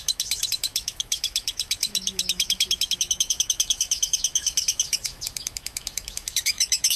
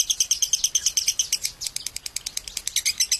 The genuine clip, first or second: second